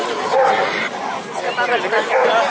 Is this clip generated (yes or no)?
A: no